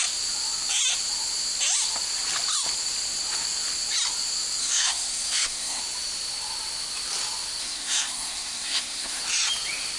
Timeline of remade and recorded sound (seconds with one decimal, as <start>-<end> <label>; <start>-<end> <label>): 0.0-4.6 recorded; 4.6-5.8 remade; 5.8-7.6 recorded; 7.6-9.2 remade; 9.2-10.0 recorded